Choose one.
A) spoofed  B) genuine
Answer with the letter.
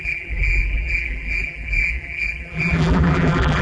A